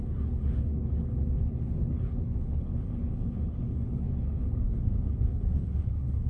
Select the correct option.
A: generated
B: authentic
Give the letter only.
A